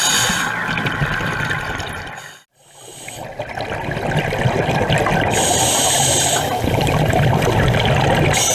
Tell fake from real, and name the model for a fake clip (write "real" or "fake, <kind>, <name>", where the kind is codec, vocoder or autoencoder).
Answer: real